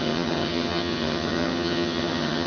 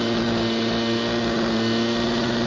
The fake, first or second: first